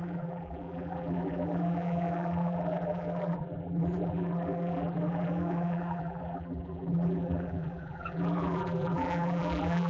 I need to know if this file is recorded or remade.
remade